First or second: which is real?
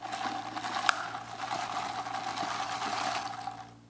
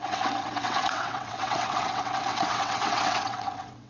first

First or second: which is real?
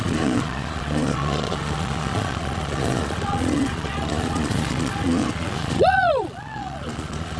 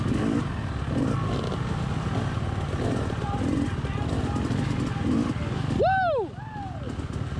second